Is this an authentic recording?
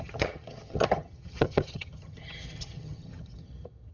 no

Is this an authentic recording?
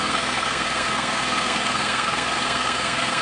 no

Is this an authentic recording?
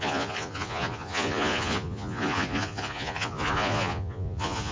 no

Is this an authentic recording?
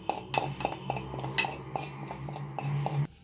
yes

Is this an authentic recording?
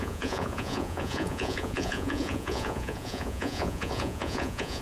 no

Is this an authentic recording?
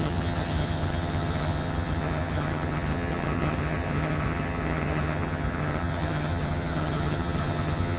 no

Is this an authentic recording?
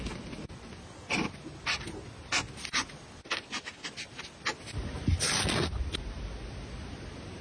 yes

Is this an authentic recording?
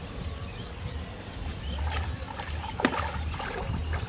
yes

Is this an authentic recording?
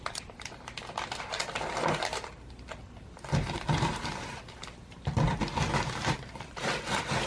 no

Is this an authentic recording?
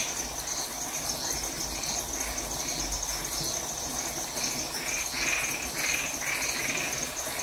yes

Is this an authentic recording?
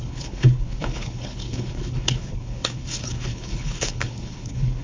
no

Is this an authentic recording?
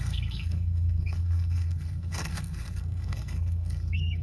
no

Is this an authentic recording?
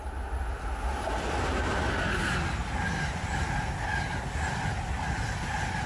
yes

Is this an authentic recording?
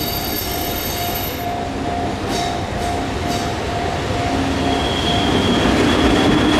yes